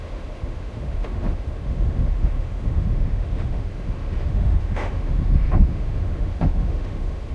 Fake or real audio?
fake